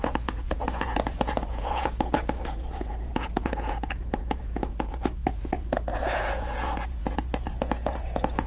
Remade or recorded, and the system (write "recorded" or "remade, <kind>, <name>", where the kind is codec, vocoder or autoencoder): remade, vocoder, Vocos